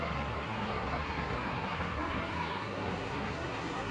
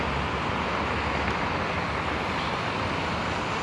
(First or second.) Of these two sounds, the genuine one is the second